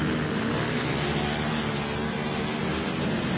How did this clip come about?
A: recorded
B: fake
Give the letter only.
A